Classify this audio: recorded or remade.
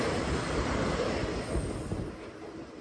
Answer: recorded